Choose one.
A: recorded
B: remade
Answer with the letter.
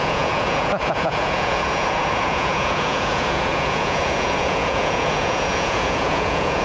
B